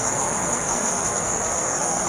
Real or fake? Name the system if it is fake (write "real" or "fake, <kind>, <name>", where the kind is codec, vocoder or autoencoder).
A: fake, codec, SNAC